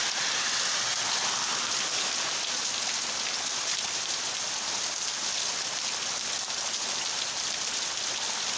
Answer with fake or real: real